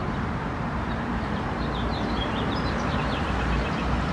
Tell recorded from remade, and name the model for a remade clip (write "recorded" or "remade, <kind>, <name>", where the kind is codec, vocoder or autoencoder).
remade, vocoder, BigVGAN v2